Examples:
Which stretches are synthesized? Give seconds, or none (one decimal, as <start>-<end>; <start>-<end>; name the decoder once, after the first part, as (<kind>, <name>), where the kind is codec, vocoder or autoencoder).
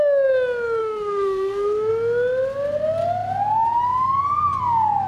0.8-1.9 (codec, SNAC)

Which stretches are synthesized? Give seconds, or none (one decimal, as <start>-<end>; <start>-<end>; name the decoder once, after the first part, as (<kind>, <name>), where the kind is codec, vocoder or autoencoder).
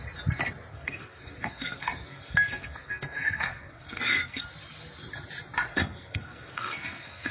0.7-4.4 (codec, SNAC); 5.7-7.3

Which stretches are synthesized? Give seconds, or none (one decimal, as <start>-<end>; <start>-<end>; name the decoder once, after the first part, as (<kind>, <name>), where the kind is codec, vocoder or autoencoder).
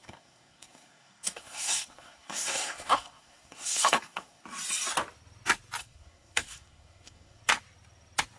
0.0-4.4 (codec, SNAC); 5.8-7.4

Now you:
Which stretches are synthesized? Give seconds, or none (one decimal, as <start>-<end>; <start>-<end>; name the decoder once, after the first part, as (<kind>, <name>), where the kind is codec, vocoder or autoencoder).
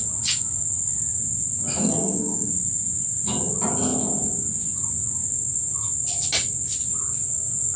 1.8-2.5 (codec, SNAC)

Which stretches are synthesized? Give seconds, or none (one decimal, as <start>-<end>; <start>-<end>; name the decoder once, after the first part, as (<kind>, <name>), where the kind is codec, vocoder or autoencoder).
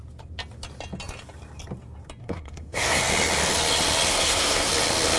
2.2-3.0 (codec, SNAC); 4.1-4.7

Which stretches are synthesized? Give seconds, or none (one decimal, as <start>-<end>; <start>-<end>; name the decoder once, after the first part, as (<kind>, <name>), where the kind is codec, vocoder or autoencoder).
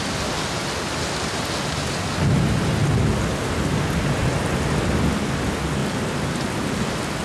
none